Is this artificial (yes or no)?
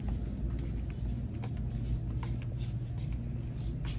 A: no